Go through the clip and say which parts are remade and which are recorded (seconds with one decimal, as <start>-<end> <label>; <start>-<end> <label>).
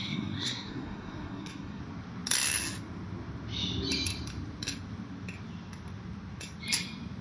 0.0-1.8 remade; 1.8-7.2 recorded